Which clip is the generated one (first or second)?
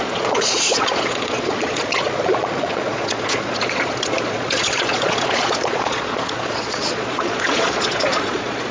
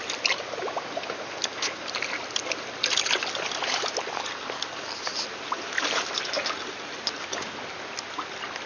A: first